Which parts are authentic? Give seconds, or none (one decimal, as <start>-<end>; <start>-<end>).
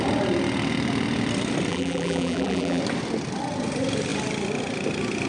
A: 0.0-1.7; 2.8-5.3